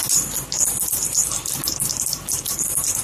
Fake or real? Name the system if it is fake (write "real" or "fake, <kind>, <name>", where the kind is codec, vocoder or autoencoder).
real